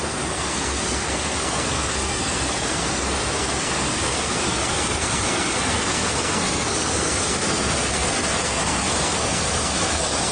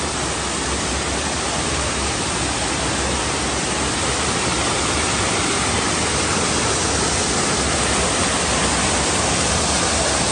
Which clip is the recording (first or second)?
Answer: second